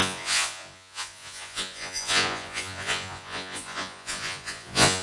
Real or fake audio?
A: fake